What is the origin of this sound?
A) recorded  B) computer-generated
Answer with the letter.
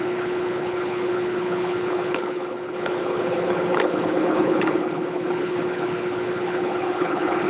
B